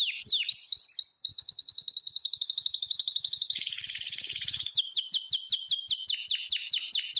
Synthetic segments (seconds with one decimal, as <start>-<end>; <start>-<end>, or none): 1.3-5.1